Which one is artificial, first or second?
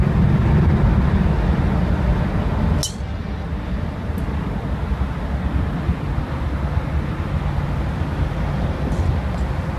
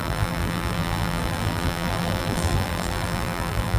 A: second